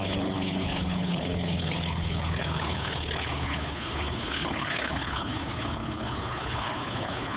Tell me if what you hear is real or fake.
fake